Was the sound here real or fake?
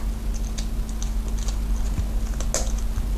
real